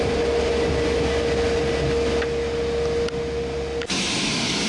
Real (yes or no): yes